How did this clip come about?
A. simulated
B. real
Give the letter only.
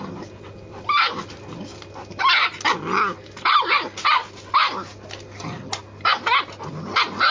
B